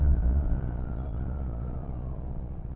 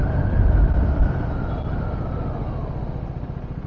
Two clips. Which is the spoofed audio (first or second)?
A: first